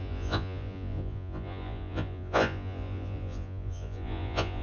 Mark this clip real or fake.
fake